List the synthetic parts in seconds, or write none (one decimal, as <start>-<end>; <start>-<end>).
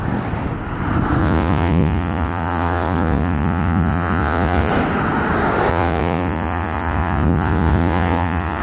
1.2-4.7; 5.7-8.6